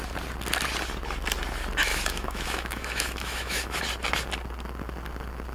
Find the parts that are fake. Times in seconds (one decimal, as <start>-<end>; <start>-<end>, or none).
1.9-3.8